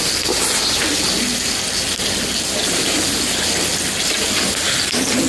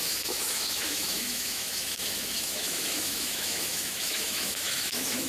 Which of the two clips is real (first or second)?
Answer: first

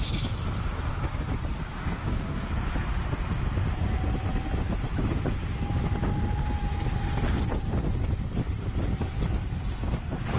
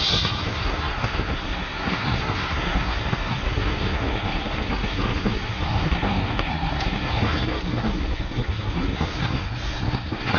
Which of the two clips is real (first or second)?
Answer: first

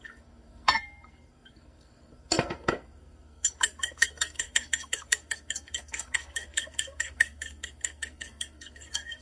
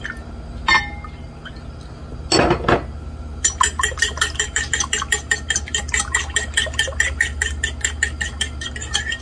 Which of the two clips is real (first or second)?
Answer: second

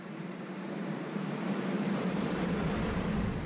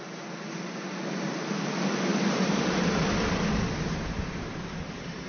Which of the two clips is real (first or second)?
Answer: second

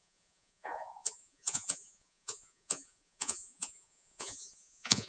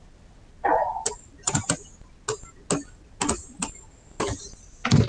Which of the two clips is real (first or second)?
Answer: second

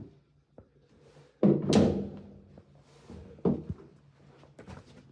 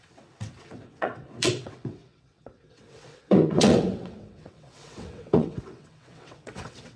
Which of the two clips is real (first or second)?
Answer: first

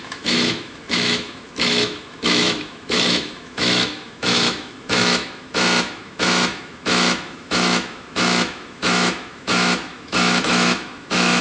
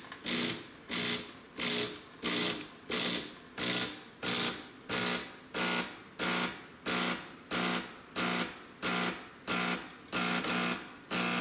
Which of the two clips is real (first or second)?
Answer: second